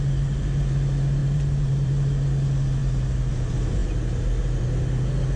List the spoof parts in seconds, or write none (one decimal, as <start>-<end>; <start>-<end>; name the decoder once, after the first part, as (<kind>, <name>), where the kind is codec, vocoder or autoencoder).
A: 1.2-2.1 (vocoder, BigVGAN v2)